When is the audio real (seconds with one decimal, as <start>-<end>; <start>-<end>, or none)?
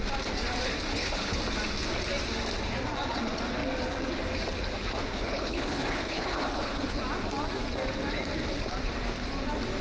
0.0-0.9; 1.4-5.1; 7.0-9.8